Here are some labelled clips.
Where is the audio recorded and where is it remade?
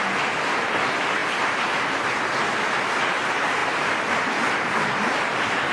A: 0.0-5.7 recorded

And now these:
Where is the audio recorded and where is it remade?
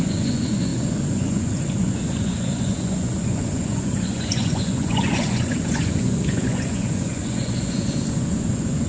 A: 0.0-8.9 remade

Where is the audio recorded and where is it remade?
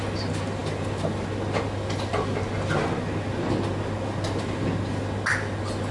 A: 0.0-5.9 recorded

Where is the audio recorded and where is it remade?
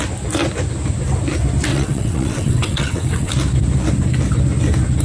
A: 0.0-1.7 recorded; 1.7-3.3 remade; 3.3-5.0 recorded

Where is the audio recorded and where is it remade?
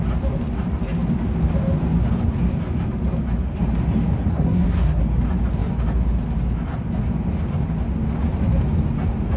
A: 0.0-4.3 recorded; 4.3-5.0 remade; 5.0-9.4 recorded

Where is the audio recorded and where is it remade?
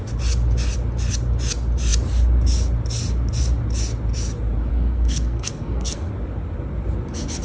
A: 0.0-4.7 recorded; 4.7-6.1 remade; 6.1-7.4 recorded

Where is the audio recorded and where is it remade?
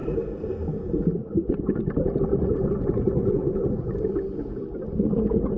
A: 0.0-1.2 recorded; 1.2-1.8 remade; 1.8-2.3 recorded; 2.3-3.9 remade; 3.9-5.6 recorded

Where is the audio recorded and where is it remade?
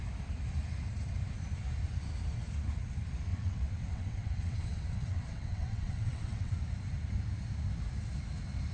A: 0.0-3.3 recorded; 3.3-6.6 remade; 6.6-8.7 recorded